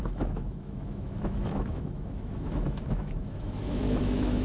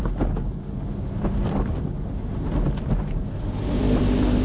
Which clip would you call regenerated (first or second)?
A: first